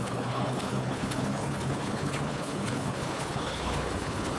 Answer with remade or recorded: remade